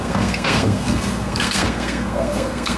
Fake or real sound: fake